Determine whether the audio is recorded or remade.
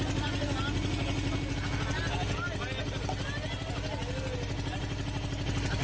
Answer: recorded